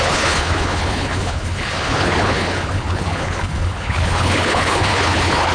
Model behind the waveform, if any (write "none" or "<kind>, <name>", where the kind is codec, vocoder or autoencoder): codec, HILCodec